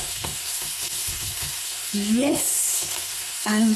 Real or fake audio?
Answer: fake